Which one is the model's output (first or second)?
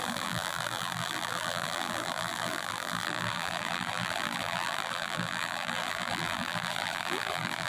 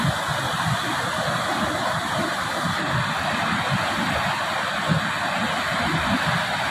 first